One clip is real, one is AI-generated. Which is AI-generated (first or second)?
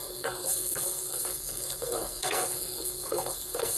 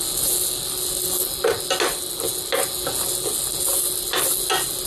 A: first